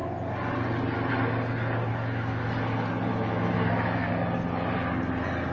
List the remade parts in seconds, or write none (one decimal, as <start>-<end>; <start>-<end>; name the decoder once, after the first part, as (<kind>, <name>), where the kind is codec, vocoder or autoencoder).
1.9-2.5 (autoencoder, DAC-VAE); 3.1-4.1